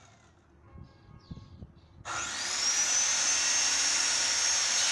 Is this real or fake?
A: real